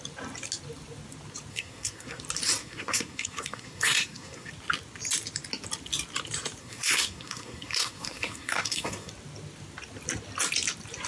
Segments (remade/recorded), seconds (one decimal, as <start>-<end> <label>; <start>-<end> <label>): 0.0-1.5 recorded; 1.5-2.2 remade; 2.2-2.6 recorded; 2.6-4.5 remade; 4.5-6.6 recorded; 6.6-9.1 remade; 9.1-11.1 recorded